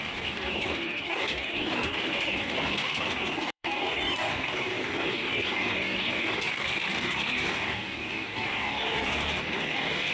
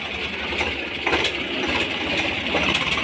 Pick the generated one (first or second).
first